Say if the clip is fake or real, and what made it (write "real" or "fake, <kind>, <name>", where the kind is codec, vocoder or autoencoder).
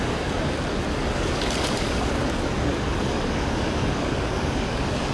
fake, codec, DAC